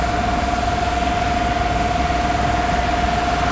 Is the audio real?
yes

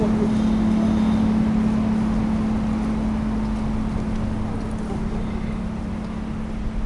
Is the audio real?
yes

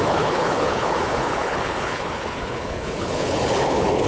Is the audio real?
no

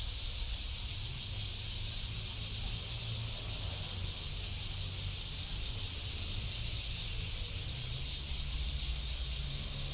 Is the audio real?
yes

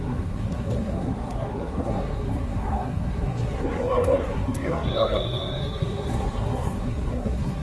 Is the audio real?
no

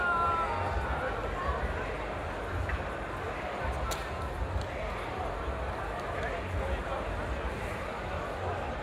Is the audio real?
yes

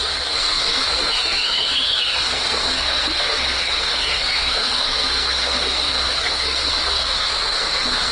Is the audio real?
no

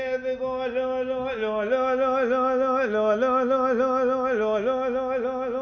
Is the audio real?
yes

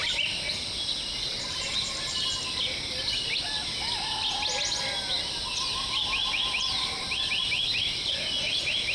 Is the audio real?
yes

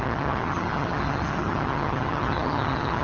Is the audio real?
no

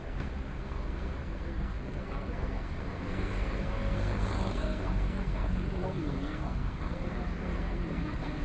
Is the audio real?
no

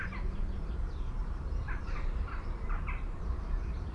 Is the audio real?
no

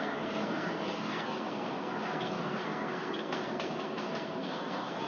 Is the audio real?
no